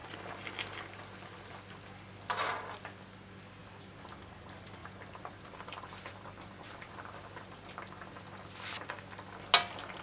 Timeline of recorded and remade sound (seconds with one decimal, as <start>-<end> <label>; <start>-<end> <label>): 0.0-4.8 recorded; 4.8-6.9 remade; 6.9-10.0 recorded